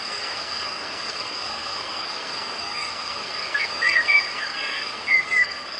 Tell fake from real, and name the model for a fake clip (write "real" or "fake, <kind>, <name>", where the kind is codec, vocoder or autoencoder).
fake, codec, SNAC